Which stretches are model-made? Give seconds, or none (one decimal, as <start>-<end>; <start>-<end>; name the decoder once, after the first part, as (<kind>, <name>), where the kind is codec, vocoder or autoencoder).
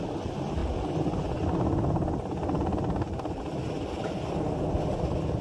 none